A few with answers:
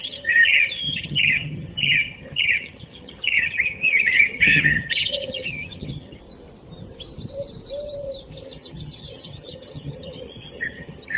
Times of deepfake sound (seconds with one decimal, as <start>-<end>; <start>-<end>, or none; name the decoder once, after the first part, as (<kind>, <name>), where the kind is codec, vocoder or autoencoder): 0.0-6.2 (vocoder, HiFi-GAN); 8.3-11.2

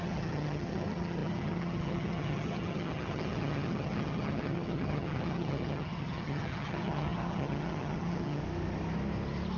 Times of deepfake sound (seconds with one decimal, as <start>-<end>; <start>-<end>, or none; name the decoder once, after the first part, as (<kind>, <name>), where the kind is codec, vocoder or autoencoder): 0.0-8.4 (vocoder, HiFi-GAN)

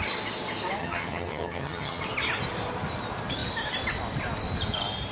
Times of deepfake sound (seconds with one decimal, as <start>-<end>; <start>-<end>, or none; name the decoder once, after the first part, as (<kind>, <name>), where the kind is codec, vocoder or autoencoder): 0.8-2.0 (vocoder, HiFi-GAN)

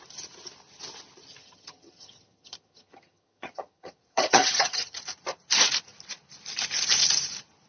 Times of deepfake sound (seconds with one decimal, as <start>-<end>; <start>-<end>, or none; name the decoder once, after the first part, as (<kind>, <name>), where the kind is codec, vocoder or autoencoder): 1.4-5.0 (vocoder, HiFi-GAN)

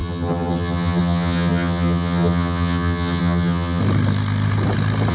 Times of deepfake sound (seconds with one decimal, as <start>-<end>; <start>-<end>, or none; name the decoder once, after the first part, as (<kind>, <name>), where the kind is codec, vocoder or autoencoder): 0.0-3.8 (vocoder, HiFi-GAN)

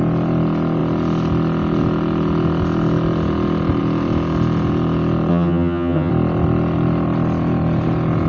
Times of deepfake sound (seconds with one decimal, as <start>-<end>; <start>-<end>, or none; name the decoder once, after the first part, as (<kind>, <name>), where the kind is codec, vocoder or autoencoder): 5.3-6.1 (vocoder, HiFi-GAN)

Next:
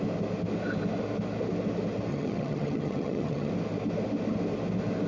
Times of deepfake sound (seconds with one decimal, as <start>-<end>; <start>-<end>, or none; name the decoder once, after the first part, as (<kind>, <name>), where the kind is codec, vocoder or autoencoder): 2.1-3.5 (vocoder, HiFi-GAN)